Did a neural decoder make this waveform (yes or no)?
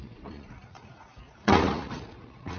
yes